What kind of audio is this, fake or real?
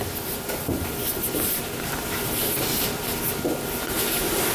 real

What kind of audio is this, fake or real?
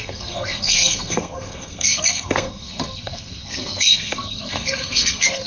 fake